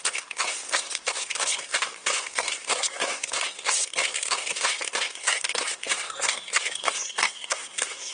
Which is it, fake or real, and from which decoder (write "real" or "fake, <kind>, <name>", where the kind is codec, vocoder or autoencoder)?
fake, codec, SNAC